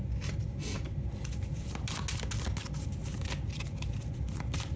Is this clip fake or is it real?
real